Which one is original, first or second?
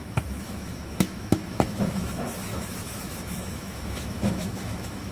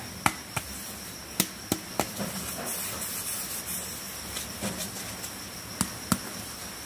second